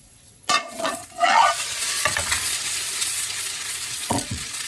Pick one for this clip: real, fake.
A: fake